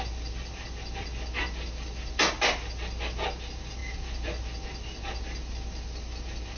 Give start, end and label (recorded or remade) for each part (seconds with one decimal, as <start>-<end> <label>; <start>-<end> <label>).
0.0-6.6 recorded